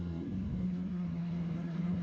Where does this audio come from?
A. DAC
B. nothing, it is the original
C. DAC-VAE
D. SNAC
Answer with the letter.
D